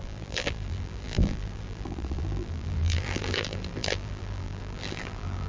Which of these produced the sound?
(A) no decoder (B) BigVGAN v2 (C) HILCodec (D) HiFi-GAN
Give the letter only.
B